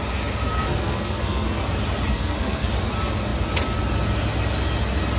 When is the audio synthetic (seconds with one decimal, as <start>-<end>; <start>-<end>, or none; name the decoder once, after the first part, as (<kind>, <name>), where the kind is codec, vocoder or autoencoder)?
0.6-1.6 (codec, SNAC); 2.1-2.7